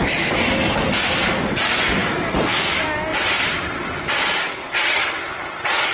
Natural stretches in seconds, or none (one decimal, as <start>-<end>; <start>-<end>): 0.0-3.1; 4.8-5.9

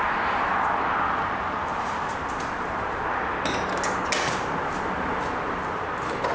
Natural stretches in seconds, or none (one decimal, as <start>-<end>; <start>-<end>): 0.0-1.7; 3.0-6.3

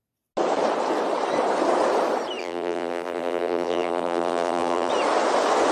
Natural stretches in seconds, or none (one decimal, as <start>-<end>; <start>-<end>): 0.0-2.4; 4.9-5.7

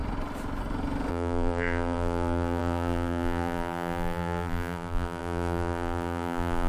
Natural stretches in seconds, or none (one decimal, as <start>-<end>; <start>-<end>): 0.0-1.1

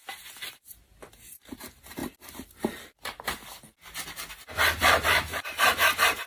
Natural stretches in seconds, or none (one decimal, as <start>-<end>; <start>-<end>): 0.0-1.4; 2.0-2.6; 3.4-4.8

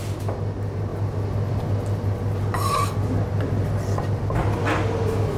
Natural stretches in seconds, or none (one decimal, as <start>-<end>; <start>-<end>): 0.0-5.4

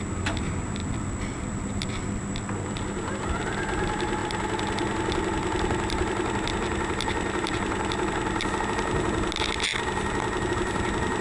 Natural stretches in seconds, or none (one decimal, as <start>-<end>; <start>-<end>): 0.0-0.8; 2.7-4.2; 8.6-11.2

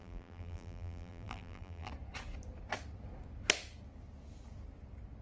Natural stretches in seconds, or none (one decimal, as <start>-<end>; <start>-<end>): 1.9-5.2